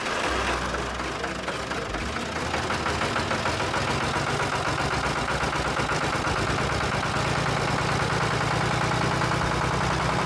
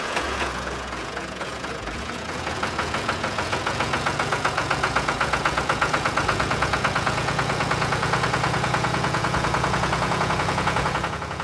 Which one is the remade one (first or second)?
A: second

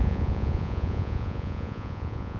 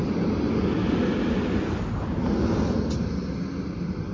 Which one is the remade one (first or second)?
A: first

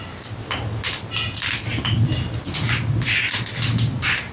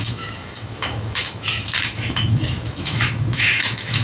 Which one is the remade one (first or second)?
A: second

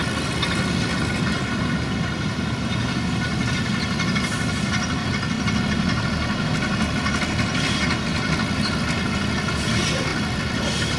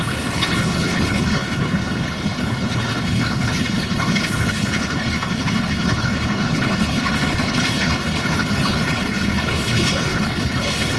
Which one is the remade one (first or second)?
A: second